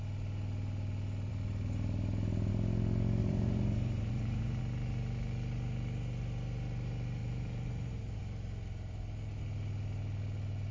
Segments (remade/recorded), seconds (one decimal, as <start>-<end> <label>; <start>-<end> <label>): 0.0-3.2 recorded; 3.2-4.6 remade; 4.6-7.2 recorded; 7.2-8.2 remade; 8.2-10.7 recorded